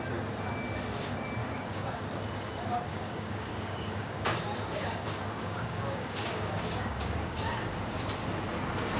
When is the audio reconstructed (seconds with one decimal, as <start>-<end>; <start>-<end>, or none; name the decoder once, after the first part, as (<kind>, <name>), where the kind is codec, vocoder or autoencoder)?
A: 1.4-2.0 (codec, DAC); 2.9-7.7